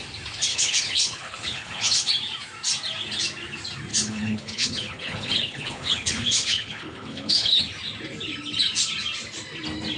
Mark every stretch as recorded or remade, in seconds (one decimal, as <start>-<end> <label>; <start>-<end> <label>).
0.0-0.5 recorded; 0.5-2.1 remade; 2.1-3.9 recorded; 3.9-7.6 remade; 7.6-10.0 recorded